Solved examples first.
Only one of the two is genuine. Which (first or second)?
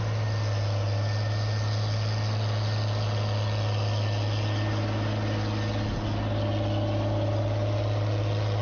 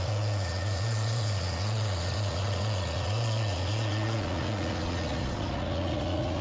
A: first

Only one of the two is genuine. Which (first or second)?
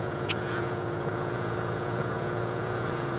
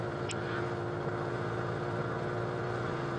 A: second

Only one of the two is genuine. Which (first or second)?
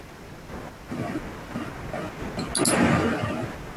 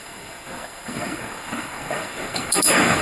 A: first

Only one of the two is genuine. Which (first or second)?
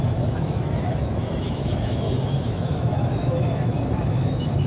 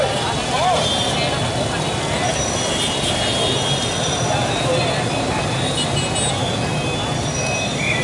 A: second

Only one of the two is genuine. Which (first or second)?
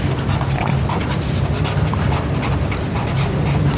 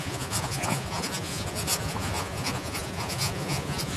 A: first